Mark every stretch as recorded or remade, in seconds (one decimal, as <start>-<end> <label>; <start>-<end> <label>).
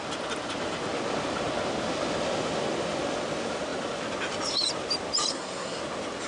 0.0-5.3 recorded; 5.3-5.8 remade; 5.8-6.3 recorded